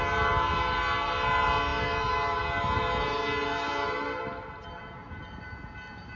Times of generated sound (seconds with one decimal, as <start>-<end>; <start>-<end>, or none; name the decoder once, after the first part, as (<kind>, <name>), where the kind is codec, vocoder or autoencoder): none